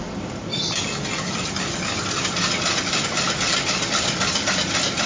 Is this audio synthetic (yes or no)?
no